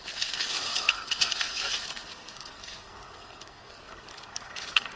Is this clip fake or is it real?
fake